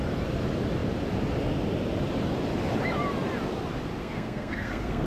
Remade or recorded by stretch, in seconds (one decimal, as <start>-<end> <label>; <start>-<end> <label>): 0.0-4.0 recorded; 4.0-5.1 remade